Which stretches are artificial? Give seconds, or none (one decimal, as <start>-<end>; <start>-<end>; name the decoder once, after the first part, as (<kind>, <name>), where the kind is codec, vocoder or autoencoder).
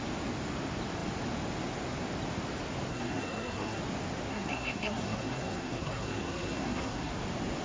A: 2.9-3.8 (codec, SNAC); 4.3-7.1